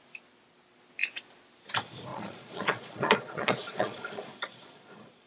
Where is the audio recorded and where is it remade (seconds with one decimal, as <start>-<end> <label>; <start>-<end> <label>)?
0.0-2.1 recorded; 2.1-5.3 remade